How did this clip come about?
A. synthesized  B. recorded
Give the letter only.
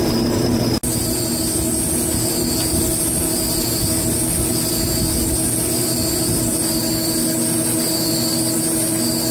B